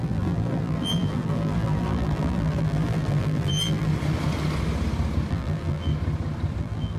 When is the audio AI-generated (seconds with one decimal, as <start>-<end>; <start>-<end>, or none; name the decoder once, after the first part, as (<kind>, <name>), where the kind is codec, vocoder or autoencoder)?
0.0-3.9 (vocoder, BigVGAN v2); 5.3-5.9; 6.6-7.0